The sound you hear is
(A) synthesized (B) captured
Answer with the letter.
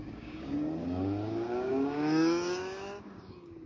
A